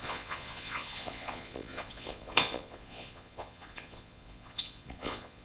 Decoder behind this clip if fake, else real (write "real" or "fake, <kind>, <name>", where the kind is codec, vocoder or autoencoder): fake, vocoder, Vocos